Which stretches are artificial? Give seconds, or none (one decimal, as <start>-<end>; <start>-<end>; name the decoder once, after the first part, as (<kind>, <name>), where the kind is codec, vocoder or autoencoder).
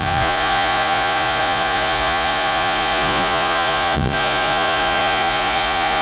0.0-6.0 (vocoder, Vocos)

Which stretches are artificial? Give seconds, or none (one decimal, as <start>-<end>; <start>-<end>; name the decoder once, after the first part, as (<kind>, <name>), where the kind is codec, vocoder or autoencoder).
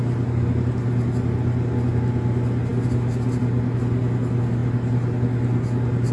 none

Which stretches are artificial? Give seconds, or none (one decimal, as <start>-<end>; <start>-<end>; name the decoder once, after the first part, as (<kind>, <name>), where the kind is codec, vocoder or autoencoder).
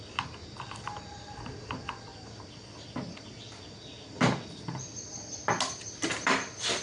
none